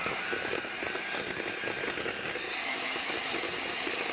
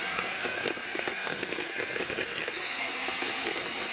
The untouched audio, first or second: first